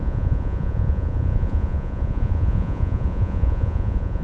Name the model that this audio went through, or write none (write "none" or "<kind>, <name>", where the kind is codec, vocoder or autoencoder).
vocoder, Vocos